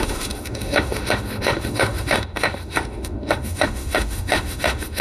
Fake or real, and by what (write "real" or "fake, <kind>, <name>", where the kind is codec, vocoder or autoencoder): fake, autoencoder, DAC-VAE